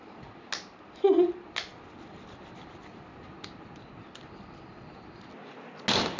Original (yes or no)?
yes